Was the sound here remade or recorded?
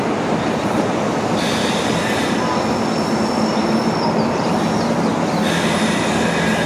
recorded